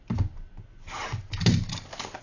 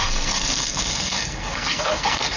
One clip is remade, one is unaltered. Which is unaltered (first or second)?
first